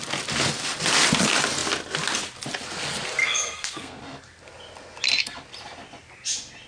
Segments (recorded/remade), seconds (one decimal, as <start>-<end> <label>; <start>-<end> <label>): 0.0-3.2 recorded; 3.2-4.0 remade; 4.0-6.7 recorded